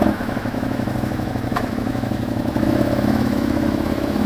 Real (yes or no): no